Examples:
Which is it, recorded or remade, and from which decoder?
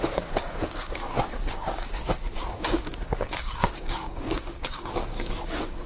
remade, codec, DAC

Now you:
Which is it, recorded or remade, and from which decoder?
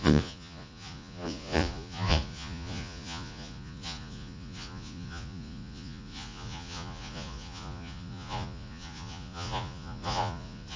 remade, vocoder, Vocos